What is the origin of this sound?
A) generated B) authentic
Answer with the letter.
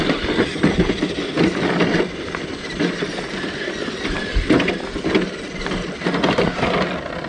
B